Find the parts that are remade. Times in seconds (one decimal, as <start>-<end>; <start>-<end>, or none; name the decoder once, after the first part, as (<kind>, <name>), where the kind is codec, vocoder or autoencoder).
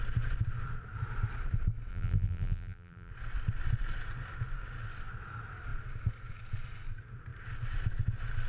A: 1.9-3.1 (vocoder, BigVGAN v2)